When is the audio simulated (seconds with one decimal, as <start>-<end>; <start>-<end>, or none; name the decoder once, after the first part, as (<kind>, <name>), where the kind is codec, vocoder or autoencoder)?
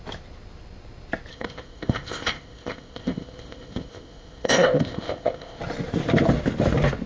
1.3-5.6 (codec, ZipCodec)